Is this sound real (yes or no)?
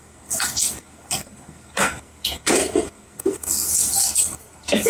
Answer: no